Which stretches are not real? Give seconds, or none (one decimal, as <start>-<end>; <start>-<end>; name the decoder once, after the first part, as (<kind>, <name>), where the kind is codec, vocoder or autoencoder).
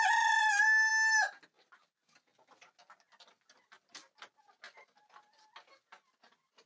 none